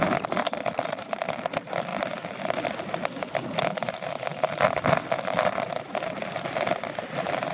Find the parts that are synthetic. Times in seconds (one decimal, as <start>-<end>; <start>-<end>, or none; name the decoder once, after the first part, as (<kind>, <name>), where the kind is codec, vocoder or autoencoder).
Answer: none